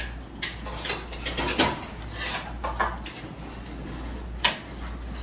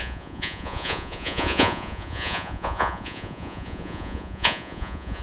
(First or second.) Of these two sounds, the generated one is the second